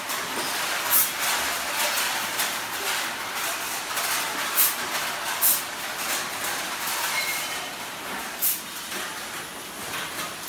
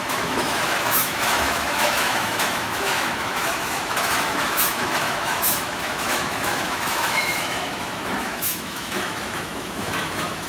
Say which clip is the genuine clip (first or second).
first